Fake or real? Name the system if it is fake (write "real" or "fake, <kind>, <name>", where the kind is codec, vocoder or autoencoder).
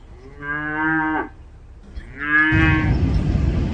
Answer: real